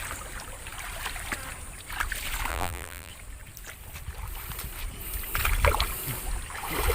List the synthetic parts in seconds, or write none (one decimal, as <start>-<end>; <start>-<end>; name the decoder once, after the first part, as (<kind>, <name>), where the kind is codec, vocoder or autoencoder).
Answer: 2.5-3.1 (vocoder, BigVGAN v2)